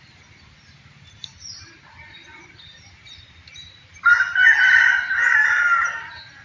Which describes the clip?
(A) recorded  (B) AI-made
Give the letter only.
A